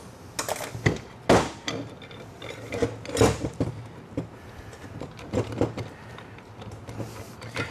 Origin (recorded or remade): recorded